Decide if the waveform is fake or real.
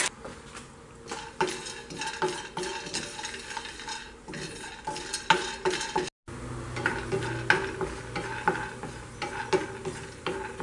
real